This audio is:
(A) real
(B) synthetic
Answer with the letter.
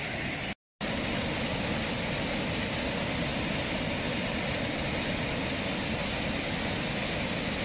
A